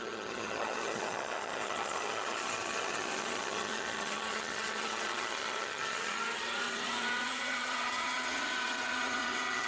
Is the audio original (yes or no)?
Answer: no